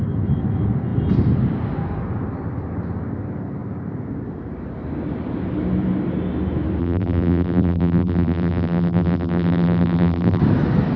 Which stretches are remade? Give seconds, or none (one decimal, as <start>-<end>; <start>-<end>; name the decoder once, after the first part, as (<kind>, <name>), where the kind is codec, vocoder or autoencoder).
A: 6.8-10.4 (vocoder, BigVGAN v2)